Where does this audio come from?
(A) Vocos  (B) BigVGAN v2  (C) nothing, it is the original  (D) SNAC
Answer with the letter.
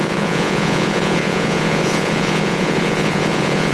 A